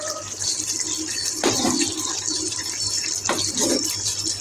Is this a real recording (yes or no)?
yes